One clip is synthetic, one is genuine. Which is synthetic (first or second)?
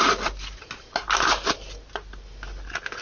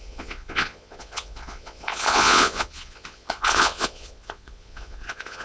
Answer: second